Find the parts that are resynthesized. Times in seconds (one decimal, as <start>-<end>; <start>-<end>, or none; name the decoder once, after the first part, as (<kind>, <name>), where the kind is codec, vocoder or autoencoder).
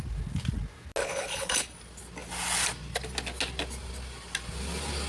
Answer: 1.0-1.6 (codec, HILCodec)